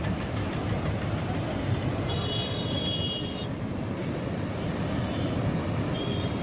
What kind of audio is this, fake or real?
real